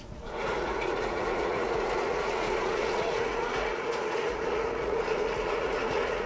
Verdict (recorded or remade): remade